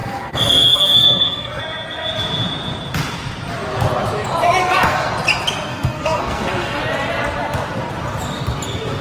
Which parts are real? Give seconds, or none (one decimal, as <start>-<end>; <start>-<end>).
1.6-4.6; 5.1-5.7; 6.8-9.0